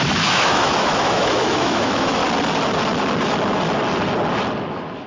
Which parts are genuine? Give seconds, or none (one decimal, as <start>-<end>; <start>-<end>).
2.2-4.6

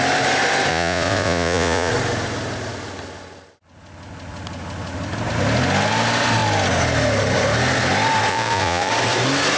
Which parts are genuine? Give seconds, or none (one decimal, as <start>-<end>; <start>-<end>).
0.0-0.7; 1.9-8.3; 8.9-9.6

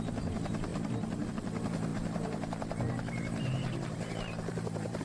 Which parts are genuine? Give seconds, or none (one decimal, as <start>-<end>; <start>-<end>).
none

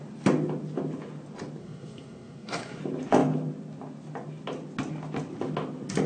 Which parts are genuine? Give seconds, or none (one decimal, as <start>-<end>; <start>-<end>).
0.0-1.6; 2.8-6.1

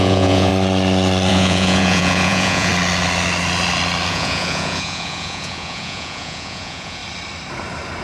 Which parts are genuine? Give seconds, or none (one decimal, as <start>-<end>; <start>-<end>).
0.5-1.3; 2.7-4.1; 7.0-8.0

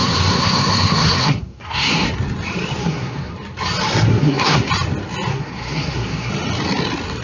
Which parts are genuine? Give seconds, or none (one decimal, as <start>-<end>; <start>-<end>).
2.1-2.8; 3.3-4.1; 4.7-5.3; 6.3-7.2

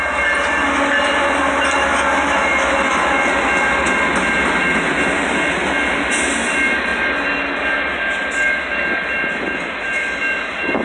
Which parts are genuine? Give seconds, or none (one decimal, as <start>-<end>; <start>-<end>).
0.0-10.8

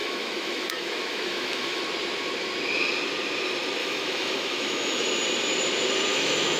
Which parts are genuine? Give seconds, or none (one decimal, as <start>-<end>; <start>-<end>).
1.8-3.8; 5.0-6.1